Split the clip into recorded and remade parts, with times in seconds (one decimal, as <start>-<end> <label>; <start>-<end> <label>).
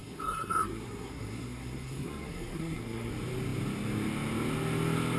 0.0-3.1 remade; 3.1-5.2 recorded